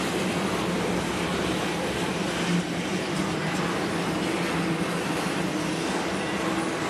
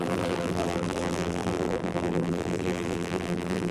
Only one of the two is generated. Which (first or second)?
second